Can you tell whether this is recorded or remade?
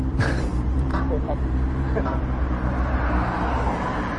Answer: remade